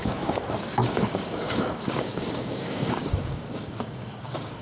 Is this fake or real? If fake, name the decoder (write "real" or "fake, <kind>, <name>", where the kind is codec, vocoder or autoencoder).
fake, codec, DAC